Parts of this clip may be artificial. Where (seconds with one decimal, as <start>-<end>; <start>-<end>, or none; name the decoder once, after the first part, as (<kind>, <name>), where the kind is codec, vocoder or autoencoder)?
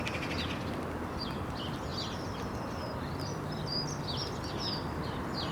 none